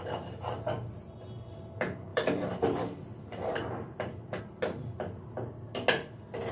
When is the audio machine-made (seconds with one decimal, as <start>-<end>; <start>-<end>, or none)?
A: 2.1-4.4